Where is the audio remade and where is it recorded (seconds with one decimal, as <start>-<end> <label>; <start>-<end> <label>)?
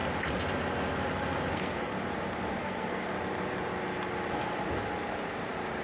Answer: 0.0-1.5 recorded; 1.5-1.9 remade; 1.9-2.5 recorded; 2.5-3.1 remade; 3.1-5.8 recorded